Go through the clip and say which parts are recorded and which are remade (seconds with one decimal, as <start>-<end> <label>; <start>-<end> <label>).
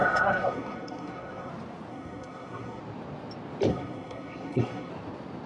0.0-1.5 remade; 1.5-1.9 recorded; 1.9-2.8 remade; 2.8-3.7 recorded; 3.7-4.9 remade; 4.9-5.5 recorded